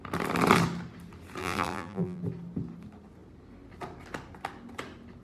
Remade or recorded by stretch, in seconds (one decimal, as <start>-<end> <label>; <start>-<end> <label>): 0.0-1.4 recorded; 1.4-2.2 remade; 2.2-5.2 recorded